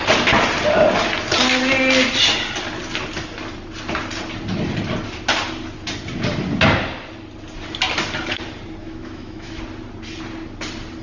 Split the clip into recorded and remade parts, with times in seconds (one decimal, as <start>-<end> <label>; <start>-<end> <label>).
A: 0.0-8.8 recorded; 8.8-9.6 remade; 9.6-11.0 recorded

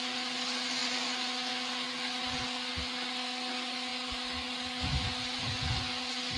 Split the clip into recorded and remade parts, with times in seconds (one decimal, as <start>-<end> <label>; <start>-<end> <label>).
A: 0.0-6.4 recorded

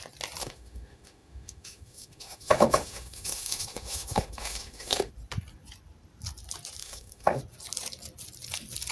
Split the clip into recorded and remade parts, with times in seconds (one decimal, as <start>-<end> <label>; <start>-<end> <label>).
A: 0.0-0.4 recorded; 0.4-5.1 remade; 5.1-6.8 recorded; 6.8-7.4 remade; 7.4-8.9 recorded

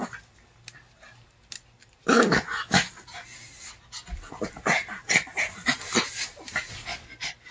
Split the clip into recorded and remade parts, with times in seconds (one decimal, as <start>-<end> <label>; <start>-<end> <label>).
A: 0.0-2.0 recorded; 2.0-2.9 remade; 2.9-7.5 recorded

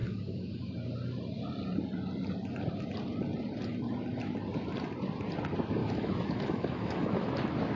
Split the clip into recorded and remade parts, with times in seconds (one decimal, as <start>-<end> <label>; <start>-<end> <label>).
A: 0.0-0.7 remade; 0.7-5.8 recorded; 5.8-7.3 remade; 7.3-7.8 recorded

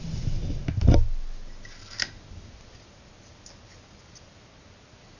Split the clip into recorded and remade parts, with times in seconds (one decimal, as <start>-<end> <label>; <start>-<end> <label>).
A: 0.0-5.2 recorded

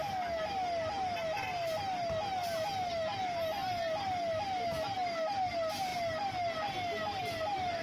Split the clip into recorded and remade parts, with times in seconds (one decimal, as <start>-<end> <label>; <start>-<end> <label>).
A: 0.0-7.8 recorded